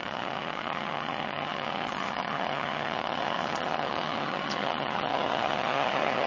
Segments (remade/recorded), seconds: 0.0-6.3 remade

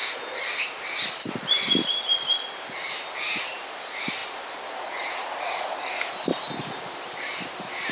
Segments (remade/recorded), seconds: 0.0-7.9 recorded

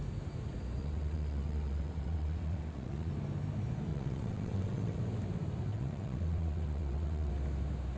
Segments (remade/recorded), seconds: 0.0-0.8 recorded; 0.8-3.1 remade; 3.1-3.9 recorded; 3.9-5.0 remade; 5.0-5.7 recorded; 5.7-7.3 remade; 7.3-8.0 recorded

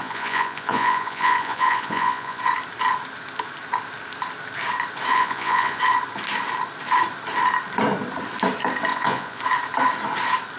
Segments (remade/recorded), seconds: 0.0-2.4 remade; 2.4-5.1 recorded; 5.1-5.8 remade; 5.8-8.9 recorded; 8.9-9.4 remade; 9.4-10.6 recorded

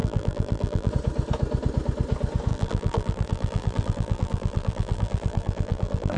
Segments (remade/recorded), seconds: 0.0-0.9 remade; 0.9-2.5 recorded; 2.5-6.2 remade

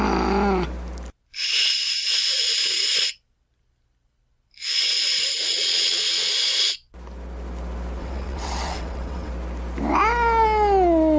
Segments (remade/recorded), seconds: 0.0-5.5 recorded; 5.5-6.3 remade; 6.3-8.0 recorded; 8.0-9.3 remade; 9.3-11.2 recorded

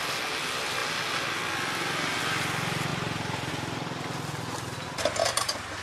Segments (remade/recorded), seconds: 0.0-5.2 recorded; 5.2-5.8 remade